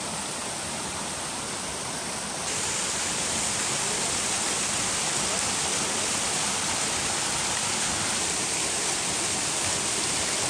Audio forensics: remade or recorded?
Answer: remade